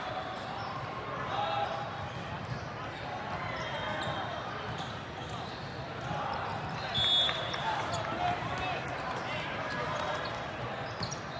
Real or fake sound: real